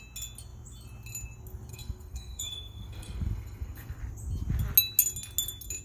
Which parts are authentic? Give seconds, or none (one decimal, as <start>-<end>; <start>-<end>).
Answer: 0.0-1.7; 4.0-5.8

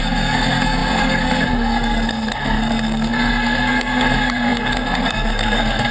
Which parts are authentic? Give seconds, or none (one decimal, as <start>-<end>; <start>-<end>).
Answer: none

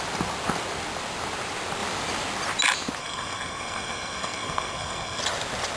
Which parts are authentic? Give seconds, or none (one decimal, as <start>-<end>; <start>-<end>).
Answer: 0.0-3.0; 5.2-5.8

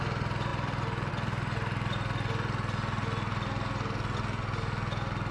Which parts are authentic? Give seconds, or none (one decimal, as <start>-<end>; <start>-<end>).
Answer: 0.0-5.3